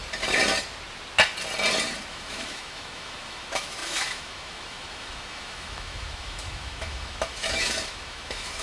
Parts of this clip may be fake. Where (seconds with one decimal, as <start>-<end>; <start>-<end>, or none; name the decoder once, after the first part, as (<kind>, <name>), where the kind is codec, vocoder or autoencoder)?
2.1-8.6 (autoencoder, DAC-VAE)